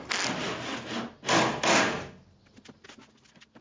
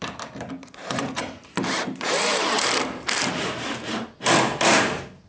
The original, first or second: first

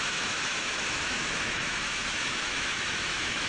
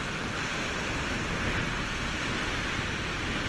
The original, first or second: second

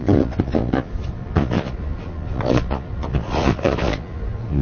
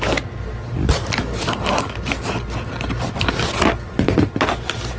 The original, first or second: second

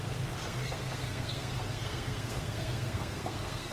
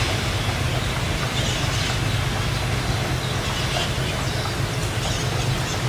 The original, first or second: second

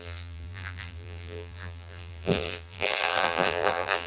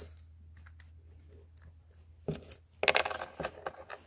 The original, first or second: second